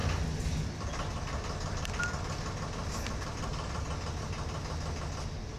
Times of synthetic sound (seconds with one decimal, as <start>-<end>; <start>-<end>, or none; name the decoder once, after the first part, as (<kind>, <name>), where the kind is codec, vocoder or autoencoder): none